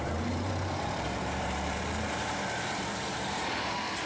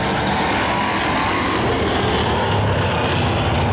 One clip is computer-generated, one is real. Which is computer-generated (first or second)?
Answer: first